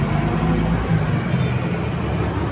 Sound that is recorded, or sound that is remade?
recorded